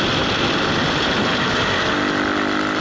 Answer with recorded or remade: recorded